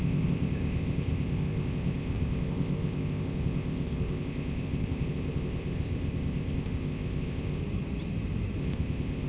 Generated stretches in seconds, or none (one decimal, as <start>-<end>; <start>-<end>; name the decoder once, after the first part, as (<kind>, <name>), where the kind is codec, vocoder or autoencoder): 0.0-7.6 (codec, ZipCodec); 8.6-9.3